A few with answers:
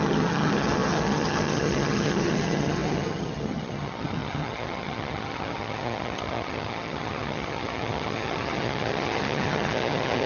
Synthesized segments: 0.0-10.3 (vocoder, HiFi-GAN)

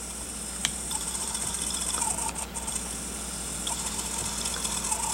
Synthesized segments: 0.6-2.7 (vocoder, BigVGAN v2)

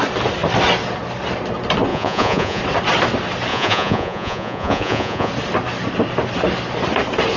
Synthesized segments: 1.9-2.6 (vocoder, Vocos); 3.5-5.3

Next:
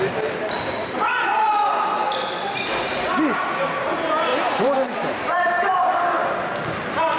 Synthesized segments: 4.3-5.9 (vocoder, BigVGAN v2)

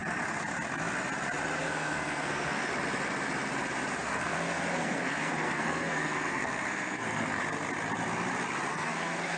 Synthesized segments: 1.6-2.7 (codec, SNAC); 4.0-7.4; 8.7-9.4

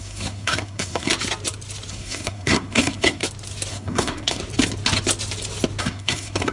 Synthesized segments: 0.0-1.1 (codec, SNAC); 1.9-3.2; 3.7-4.4; 5.8-6.5